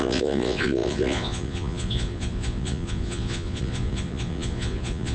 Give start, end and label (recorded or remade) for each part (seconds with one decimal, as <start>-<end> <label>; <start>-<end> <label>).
0.0-5.1 remade